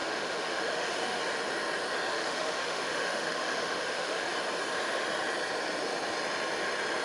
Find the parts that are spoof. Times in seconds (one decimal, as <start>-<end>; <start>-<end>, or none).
0.0-1.2; 2.1-4.3